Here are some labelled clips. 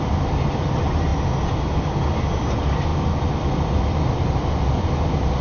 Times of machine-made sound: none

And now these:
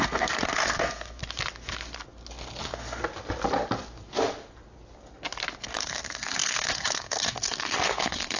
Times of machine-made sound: 0.0-1.2 (codec, SNAC); 2.6-3.0; 5.6-8.4

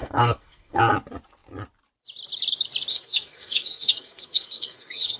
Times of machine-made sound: 0.0-0.8 (codec, SNAC); 2.9-5.2